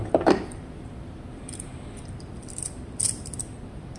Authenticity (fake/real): fake